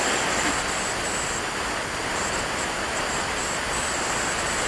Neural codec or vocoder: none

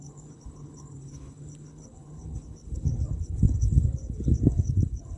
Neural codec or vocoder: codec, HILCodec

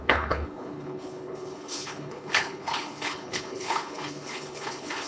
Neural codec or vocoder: codec, HILCodec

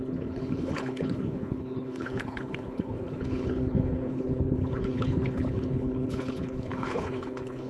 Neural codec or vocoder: codec, HILCodec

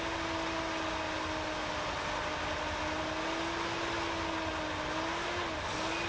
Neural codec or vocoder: none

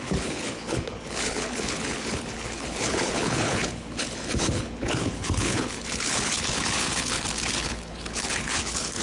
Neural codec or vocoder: codec, HILCodec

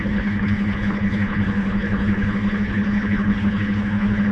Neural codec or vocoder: codec, HILCodec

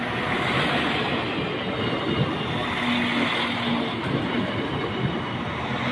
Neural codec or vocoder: none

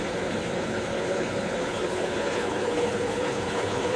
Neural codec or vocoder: codec, HILCodec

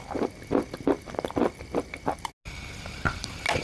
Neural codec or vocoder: none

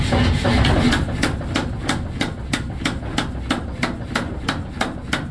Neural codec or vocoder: none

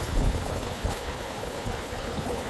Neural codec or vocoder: codec, HILCodec